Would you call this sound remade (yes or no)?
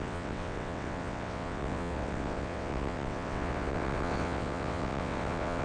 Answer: yes